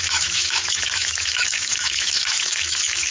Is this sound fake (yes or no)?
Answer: yes